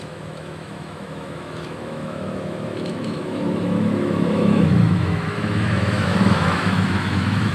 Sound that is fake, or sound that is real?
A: fake